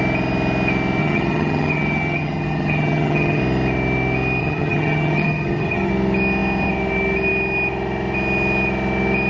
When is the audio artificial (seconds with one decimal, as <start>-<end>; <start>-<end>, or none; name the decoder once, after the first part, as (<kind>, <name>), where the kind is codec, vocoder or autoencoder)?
1.0-3.4 (vocoder, HiFi-GAN); 4.4-5.9